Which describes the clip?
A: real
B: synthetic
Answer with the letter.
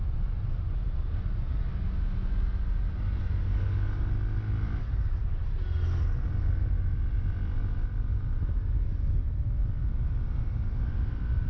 A